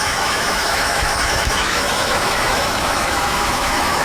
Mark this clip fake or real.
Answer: fake